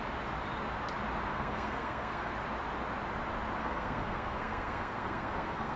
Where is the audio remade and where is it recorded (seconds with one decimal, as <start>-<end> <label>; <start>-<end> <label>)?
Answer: 0.0-1.3 recorded; 1.3-2.3 remade; 2.3-3.6 recorded; 3.6-5.8 remade